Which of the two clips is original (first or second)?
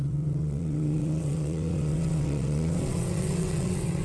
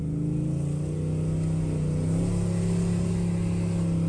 second